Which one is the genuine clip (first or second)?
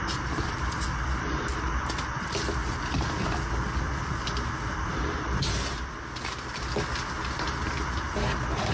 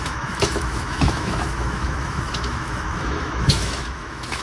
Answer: first